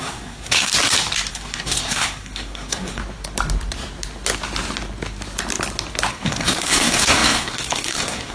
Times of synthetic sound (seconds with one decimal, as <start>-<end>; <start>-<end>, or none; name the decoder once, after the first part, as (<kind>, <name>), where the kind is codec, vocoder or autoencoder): 0.0-0.7 (codec, SNAC); 1.3-3.0; 6.1-8.3